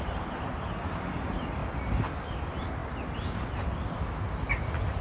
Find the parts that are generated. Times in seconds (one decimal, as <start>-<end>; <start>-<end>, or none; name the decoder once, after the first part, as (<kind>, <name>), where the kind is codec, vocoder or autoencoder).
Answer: none